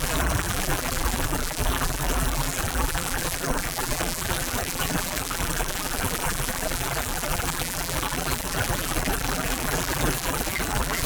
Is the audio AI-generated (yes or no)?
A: yes